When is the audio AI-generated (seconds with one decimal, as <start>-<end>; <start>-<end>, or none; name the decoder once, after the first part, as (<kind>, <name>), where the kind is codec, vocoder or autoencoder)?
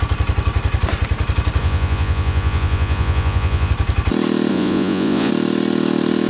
1.6-3.7 (vocoder, Vocos); 4.5-5.3